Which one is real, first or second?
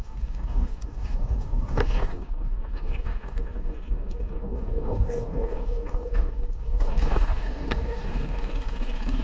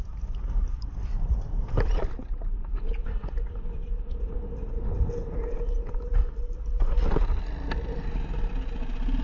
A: second